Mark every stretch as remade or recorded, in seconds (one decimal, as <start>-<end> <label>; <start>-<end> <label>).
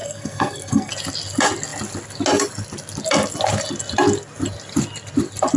0.0-0.9 remade; 0.9-5.6 recorded